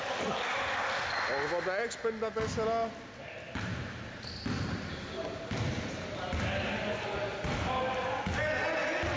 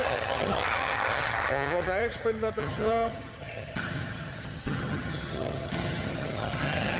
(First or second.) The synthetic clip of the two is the second